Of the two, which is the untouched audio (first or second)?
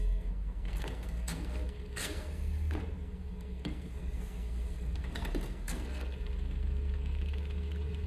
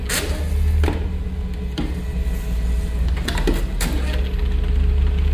second